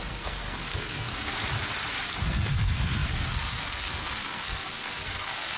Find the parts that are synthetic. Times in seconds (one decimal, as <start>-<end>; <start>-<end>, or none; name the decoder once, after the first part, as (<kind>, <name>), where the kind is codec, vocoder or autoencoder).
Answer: 0.0-1.3 (codec, SNAC); 2.2-5.6